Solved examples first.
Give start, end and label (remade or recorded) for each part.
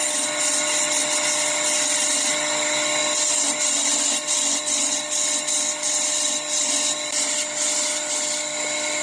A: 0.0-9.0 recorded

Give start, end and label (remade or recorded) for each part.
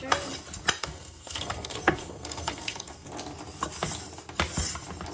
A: 0.0-0.8 recorded; 0.8-3.1 remade; 3.1-5.1 recorded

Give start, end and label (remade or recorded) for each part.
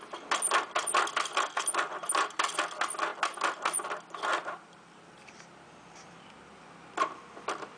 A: 0.0-7.8 recorded